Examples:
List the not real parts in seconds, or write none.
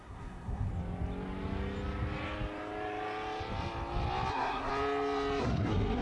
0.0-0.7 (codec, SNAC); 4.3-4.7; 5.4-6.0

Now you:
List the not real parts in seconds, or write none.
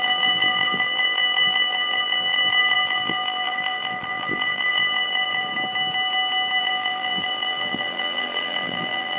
0.0-5.5 (vocoder, BigVGAN v2); 6.6-9.2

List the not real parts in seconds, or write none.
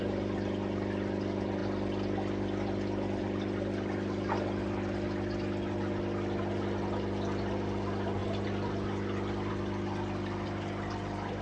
none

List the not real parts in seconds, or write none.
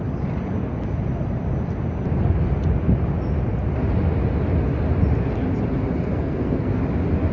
6.1-6.8 (codec, SNAC)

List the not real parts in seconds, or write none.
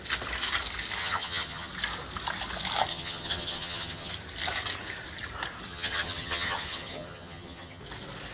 1.0-1.7 (vocoder, HiFi-GAN); 2.9-4.1; 5.7-7.8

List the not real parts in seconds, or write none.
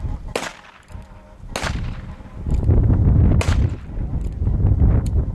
none